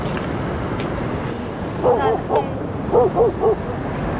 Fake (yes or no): no